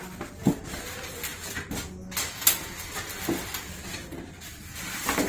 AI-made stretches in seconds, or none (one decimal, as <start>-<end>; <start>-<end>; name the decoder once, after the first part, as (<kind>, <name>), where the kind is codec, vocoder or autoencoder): none